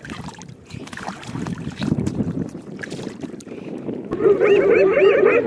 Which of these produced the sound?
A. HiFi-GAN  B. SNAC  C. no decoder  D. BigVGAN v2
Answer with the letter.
D